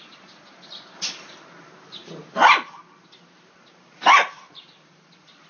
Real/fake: real